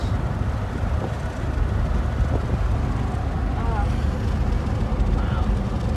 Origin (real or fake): real